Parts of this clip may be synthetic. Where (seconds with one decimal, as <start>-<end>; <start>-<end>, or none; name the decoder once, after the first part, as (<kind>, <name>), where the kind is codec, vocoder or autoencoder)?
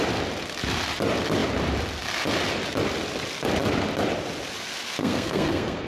5.0-5.9 (codec, SNAC)